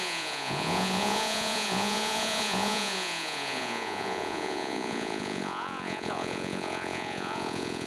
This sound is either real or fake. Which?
fake